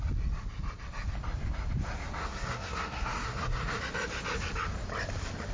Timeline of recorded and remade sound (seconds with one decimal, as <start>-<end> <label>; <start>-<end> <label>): 0.0-2.2 recorded; 2.2-3.8 remade; 3.8-5.5 recorded